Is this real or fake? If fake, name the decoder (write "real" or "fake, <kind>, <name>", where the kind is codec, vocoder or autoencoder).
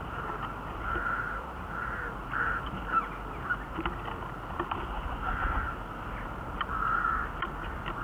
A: real